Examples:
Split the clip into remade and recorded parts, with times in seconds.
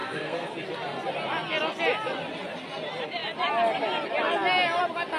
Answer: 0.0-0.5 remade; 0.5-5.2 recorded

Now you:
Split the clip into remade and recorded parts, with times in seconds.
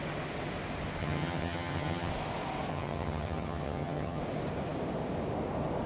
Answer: 0.0-1.0 recorded; 1.0-2.1 remade; 2.1-2.7 recorded; 2.7-4.2 remade; 4.2-5.9 recorded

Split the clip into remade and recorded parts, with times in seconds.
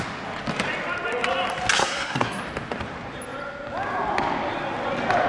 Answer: 0.0-1.8 recorded; 1.8-2.4 remade; 2.4-5.3 recorded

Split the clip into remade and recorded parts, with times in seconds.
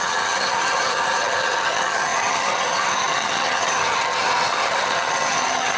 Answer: 0.0-5.8 remade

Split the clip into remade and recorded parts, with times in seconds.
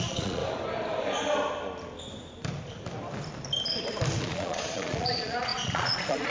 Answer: 0.0-0.4 remade; 0.4-4.2 recorded; 4.2-6.3 remade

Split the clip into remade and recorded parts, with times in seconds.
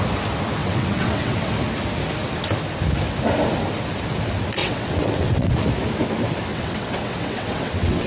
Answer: 0.0-0.6 recorded; 0.6-1.5 remade; 1.5-4.6 recorded; 4.6-5.5 remade; 5.5-6.5 recorded; 6.5-8.1 remade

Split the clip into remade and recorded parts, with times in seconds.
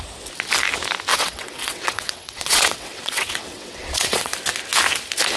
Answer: 0.0-1.1 recorded; 1.1-4.3 remade; 4.3-5.4 recorded